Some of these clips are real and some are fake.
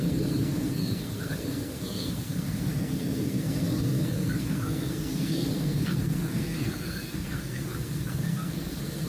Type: fake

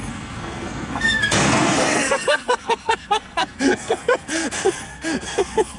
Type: fake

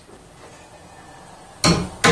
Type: real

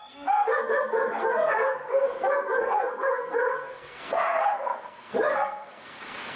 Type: fake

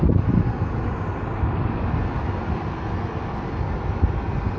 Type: real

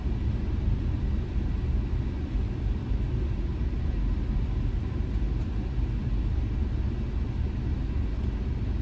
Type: real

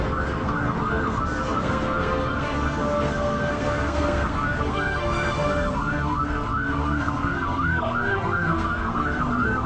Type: fake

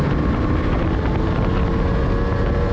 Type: real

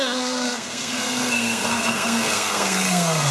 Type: fake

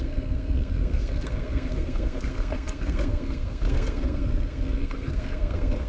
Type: fake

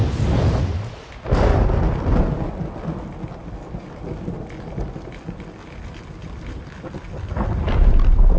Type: real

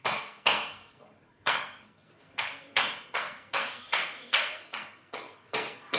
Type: fake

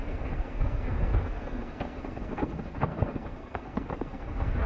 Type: fake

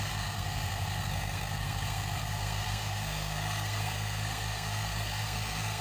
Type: fake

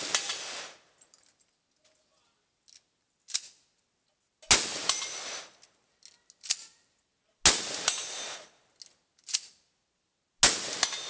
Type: real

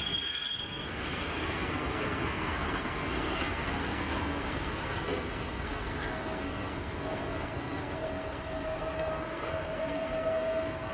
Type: fake